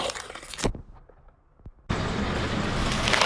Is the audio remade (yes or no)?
no